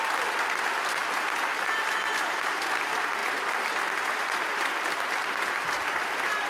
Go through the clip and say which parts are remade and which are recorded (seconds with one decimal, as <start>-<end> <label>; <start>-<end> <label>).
0.0-6.5 recorded